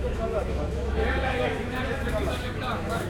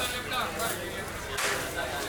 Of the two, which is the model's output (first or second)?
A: first